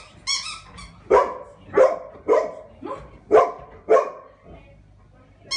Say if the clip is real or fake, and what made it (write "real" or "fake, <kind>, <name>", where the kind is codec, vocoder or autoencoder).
real